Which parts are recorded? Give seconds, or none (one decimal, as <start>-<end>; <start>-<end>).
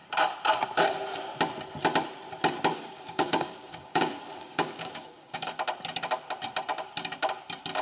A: 0.0-2.7; 5.5-7.8